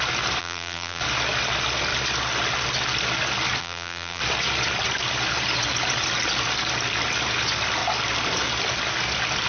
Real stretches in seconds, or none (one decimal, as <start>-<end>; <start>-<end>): 0.0-0.4; 1.0-3.6; 4.2-9.5